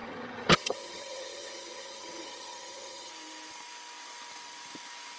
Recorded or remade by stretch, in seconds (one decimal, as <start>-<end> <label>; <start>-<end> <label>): 0.0-3.1 remade; 3.1-5.2 recorded